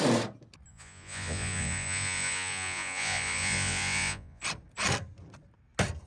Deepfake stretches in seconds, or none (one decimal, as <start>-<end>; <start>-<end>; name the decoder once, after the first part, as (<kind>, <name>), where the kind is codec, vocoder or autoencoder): 0.7-4.4 (vocoder, Vocos)